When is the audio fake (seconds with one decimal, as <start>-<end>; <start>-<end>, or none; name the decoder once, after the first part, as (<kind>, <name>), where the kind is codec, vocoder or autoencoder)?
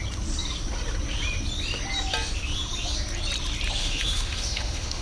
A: 3.8-5.0 (autoencoder, DAC-VAE)